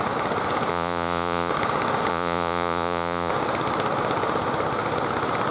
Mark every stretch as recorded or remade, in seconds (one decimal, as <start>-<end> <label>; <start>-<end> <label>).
0.0-0.7 recorded; 0.7-1.5 remade; 1.5-2.1 recorded; 2.1-3.3 remade; 3.3-5.5 recorded